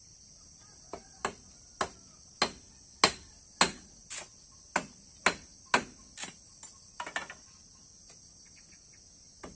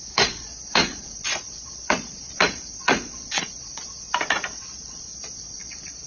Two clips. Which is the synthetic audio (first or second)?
second